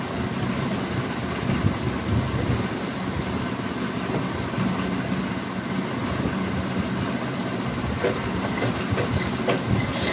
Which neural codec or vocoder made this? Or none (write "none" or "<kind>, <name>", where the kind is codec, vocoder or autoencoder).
none